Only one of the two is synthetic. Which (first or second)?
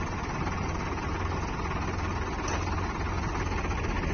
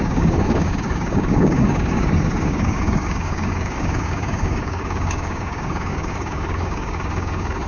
second